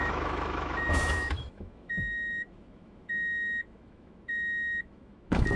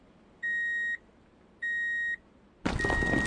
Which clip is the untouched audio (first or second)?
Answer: second